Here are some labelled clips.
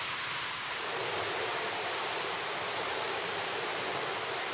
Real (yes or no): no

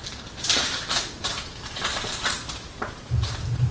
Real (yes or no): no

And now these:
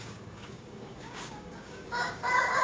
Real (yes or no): no